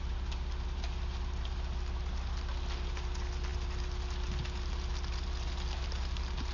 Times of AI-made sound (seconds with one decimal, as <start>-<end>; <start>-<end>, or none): none

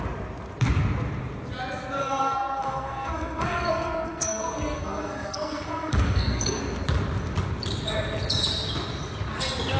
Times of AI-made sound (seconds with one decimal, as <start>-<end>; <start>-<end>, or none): 2.0-6.6

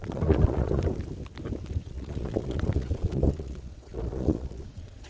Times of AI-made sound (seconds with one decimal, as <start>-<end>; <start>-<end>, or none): 0.0-0.8; 1.8-5.1

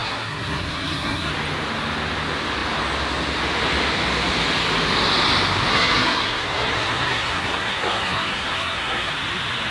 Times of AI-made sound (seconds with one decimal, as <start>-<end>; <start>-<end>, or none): 0.0-1.3; 5.7-9.1

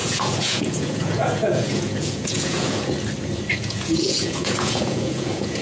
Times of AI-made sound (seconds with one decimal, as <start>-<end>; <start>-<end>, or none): 0.0-2.9; 3.5-5.6

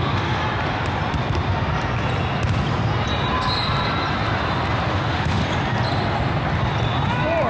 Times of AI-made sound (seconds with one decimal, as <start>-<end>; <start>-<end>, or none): 0.0-0.4; 4.9-5.4

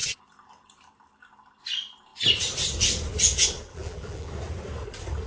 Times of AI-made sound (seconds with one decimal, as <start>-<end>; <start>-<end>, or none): 3.7-4.3